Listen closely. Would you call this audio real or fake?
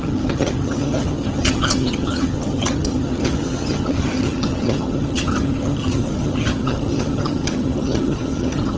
fake